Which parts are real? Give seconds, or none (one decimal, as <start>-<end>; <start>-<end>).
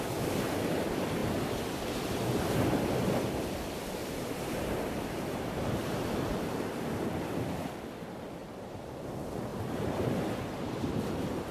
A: 0.0-4.0; 6.9-8.4; 8.9-9.5